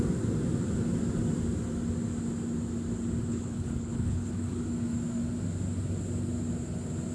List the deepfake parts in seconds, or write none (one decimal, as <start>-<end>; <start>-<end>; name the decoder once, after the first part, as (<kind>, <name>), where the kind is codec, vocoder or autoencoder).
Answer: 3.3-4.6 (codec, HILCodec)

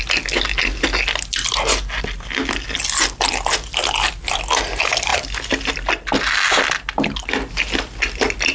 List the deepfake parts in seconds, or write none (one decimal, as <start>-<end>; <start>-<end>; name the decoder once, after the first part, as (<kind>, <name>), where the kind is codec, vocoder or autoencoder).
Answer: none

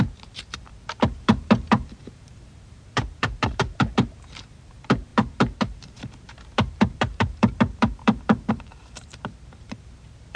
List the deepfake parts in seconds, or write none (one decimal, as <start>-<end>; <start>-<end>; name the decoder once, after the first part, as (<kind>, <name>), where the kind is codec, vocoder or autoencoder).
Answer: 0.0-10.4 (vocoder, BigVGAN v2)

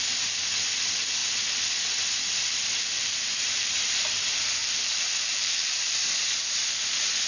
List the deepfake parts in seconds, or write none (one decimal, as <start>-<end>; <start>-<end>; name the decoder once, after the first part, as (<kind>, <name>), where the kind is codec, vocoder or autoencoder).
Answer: 3.2-4.0 (vocoder, BigVGAN v2); 4.6-6.0